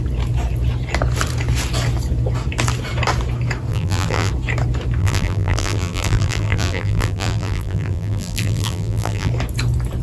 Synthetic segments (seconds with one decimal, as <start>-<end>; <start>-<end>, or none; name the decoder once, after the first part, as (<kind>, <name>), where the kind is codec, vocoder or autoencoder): 3.7-4.3 (vocoder, BigVGAN v2); 5.0-9.3